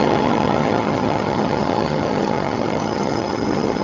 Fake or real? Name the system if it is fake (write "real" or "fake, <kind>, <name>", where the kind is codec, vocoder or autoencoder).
fake, vocoder, HiFi-GAN